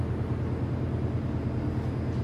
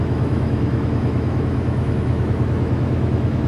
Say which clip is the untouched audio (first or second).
first